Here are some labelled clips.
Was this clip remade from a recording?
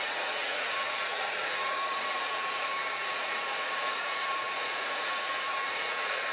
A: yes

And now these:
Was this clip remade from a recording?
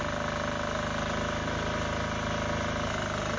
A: no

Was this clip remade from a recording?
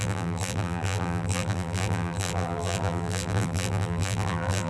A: yes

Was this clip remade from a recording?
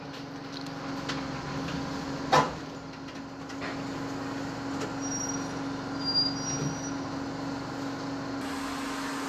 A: no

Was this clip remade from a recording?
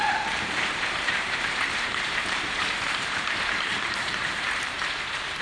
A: yes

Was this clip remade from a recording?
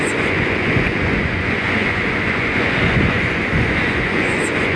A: yes